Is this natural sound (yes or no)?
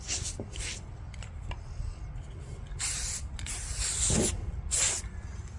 yes